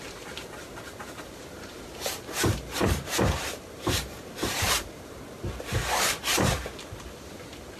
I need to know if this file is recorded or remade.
remade